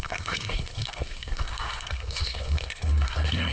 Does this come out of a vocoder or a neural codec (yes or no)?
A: yes